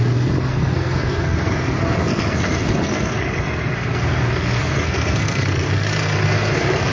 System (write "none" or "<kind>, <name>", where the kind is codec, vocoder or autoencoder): codec, SNAC